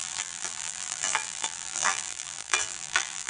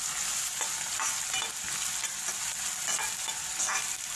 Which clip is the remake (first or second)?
first